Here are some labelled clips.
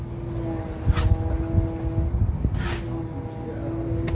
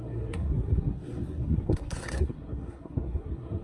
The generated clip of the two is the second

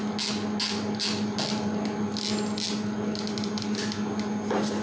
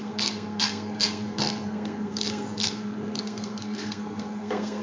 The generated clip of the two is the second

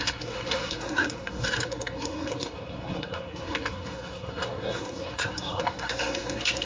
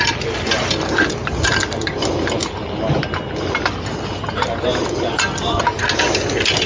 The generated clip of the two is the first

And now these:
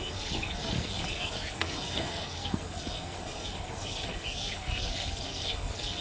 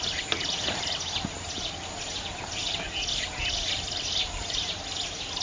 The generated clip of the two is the first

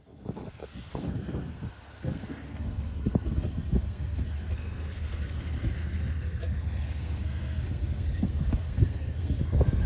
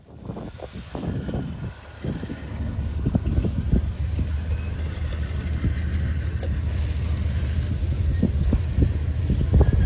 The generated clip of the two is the first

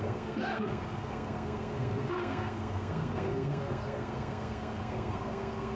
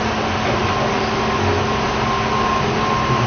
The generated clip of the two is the first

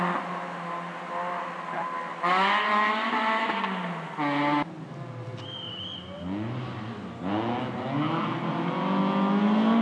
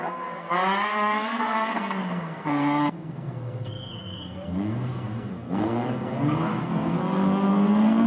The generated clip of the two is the second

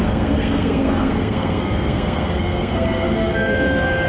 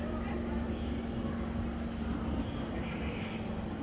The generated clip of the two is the first